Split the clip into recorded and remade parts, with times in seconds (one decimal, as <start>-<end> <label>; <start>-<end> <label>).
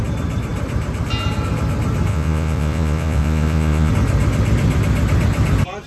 0.0-2.1 recorded; 2.1-3.9 remade; 3.9-5.9 recorded